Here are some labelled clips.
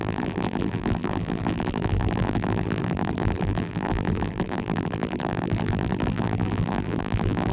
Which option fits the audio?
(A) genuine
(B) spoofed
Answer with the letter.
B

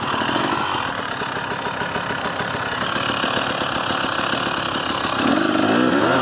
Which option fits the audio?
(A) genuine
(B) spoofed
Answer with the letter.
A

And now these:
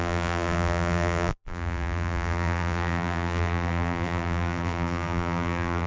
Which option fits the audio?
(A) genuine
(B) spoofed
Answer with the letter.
B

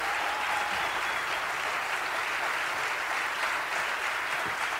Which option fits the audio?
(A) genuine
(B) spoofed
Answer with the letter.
A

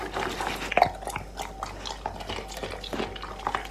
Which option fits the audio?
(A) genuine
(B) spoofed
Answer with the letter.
A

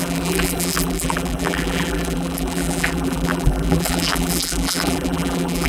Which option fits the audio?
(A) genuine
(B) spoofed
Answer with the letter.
B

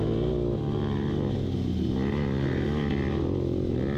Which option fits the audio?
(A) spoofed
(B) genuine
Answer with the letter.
B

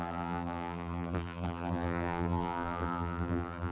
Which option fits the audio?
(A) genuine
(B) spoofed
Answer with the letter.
B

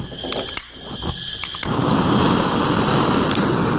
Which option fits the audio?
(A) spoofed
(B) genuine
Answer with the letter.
B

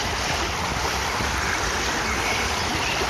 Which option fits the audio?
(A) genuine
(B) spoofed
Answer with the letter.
B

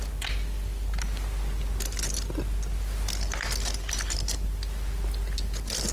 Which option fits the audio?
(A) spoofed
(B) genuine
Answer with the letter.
B